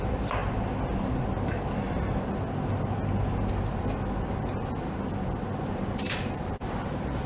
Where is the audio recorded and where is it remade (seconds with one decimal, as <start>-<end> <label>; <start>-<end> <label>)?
0.0-0.4 remade; 0.4-3.5 recorded; 3.5-7.3 remade